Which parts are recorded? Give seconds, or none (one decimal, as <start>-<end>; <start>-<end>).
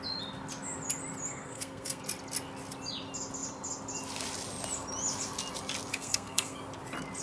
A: 0.0-1.3; 2.0-5.9; 6.6-7.2